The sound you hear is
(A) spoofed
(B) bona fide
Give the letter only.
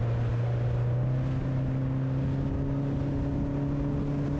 B